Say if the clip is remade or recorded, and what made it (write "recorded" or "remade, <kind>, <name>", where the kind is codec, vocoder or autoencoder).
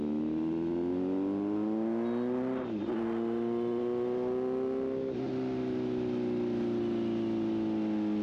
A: recorded